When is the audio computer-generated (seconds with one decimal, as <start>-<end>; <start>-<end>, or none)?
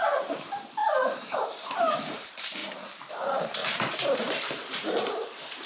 0.0-2.6; 3.1-5.7